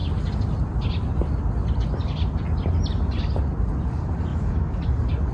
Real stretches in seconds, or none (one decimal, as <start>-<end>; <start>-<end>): 0.0-4.3; 4.8-5.3